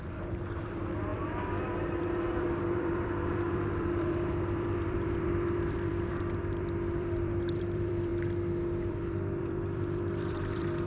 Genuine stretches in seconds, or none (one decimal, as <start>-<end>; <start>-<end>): 8.1-8.9